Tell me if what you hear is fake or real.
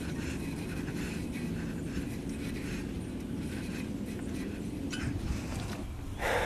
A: real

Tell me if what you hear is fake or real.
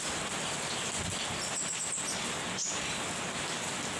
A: real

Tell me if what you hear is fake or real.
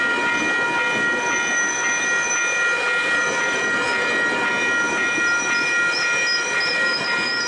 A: real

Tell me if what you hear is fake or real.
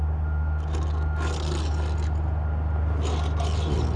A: real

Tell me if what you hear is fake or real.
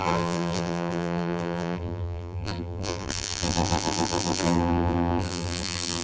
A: fake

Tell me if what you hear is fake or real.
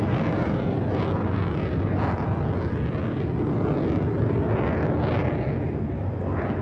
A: real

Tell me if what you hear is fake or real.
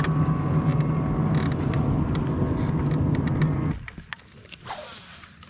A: real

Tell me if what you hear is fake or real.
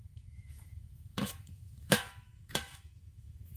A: fake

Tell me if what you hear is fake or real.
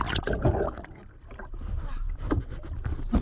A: real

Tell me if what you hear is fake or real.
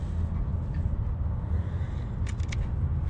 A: real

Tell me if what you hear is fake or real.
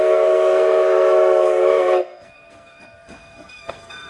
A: fake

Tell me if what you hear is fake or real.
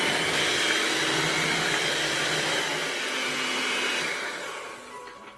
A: real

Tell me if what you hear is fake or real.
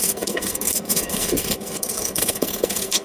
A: fake